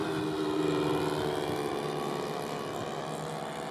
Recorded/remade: recorded